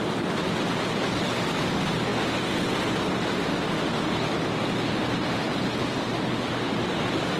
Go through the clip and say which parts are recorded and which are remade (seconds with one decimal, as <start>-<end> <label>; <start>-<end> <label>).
0.0-7.4 recorded